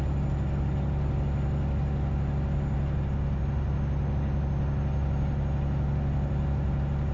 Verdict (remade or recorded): recorded